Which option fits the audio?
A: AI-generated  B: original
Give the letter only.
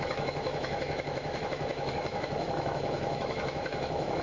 A